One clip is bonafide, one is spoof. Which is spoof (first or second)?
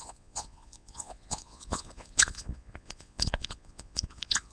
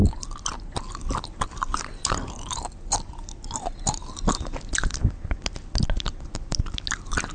first